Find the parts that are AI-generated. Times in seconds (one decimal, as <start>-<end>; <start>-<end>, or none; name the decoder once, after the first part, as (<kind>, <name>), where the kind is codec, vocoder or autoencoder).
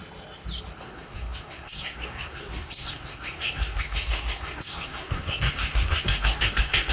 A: 0.8-6.9 (codec, SNAC)